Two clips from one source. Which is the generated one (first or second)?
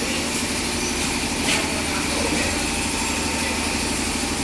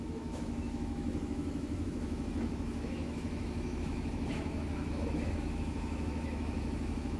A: second